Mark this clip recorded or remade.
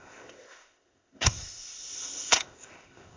remade